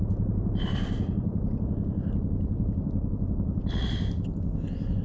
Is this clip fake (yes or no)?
yes